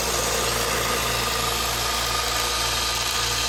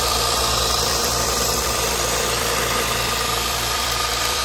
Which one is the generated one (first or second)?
second